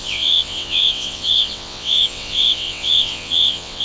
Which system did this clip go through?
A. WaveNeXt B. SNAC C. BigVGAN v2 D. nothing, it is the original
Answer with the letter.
A